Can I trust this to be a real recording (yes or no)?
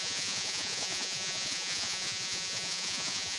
no